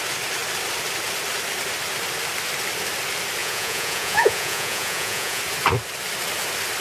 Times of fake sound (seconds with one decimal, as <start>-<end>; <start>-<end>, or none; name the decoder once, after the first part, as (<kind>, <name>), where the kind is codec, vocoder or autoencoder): 3.4-5.4 (vocoder, Vocos)